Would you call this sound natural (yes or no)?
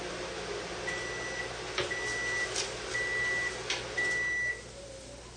yes